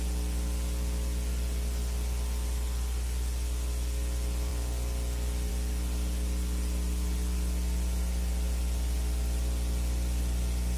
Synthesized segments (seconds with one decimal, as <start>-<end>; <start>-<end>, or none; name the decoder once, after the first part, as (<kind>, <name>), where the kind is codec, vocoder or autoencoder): none